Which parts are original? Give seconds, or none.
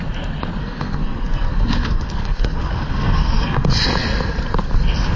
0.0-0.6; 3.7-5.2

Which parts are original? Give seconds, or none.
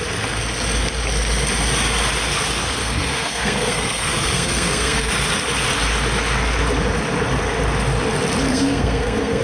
0.0-2.8; 5.1-8.5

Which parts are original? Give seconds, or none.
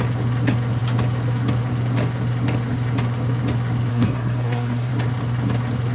0.0-3.9; 4.9-5.9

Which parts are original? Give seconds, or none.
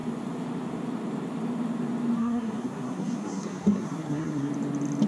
0.0-2.2; 4.5-5.1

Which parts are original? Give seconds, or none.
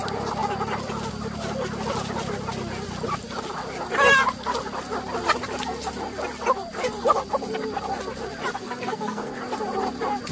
0.0-8.5; 9.4-10.3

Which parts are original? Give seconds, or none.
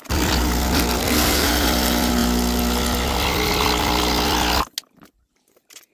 0.0-1.0; 1.5-5.9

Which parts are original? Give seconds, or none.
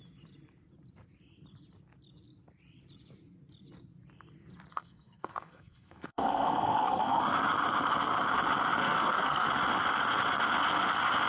0.0-4.7; 7.2-8.8; 9.5-11.3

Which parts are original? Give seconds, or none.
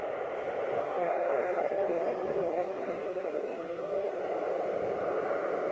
0.0-0.8; 4.2-5.7